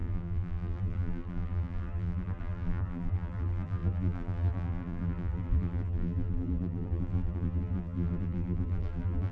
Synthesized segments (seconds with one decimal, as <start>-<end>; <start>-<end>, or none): 0.0-9.3